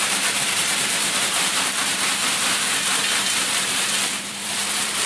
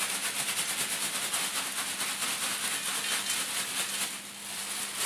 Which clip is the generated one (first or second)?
first